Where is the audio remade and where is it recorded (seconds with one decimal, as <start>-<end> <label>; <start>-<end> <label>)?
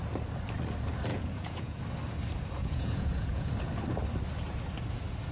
0.0-1.1 recorded; 1.1-1.8 remade; 1.8-2.6 recorded; 2.6-3.5 remade; 3.5-5.3 recorded